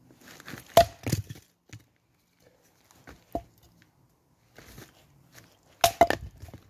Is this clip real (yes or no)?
yes